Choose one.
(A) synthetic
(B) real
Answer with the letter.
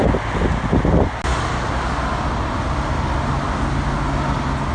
B